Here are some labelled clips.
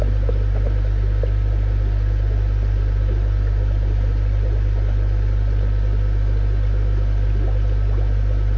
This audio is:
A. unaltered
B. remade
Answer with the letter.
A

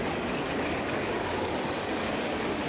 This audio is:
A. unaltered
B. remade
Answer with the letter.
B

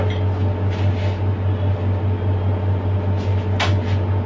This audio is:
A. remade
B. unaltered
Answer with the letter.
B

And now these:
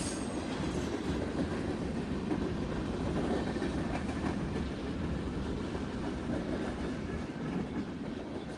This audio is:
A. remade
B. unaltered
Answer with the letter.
B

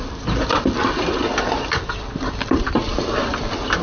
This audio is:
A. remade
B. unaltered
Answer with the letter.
B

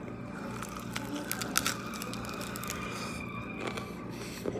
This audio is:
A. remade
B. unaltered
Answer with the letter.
B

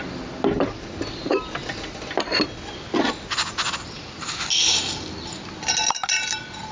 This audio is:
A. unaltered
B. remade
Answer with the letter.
A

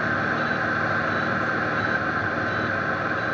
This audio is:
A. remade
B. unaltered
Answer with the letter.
B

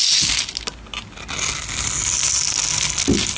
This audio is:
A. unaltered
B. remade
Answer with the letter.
A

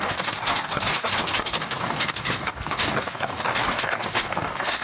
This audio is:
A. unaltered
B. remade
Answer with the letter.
B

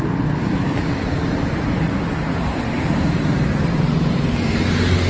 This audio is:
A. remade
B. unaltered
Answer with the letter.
B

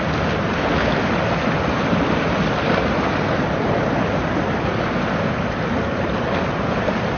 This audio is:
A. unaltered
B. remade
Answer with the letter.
A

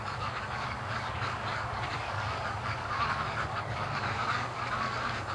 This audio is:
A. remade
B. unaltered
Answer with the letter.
A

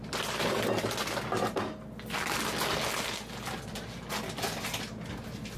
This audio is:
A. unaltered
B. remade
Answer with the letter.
A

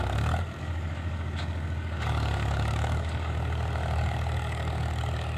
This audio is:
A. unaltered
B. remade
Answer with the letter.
B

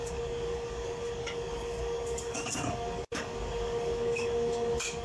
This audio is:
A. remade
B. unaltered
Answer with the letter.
A